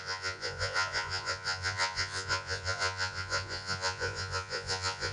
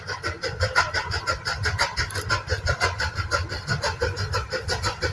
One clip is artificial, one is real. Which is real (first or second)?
second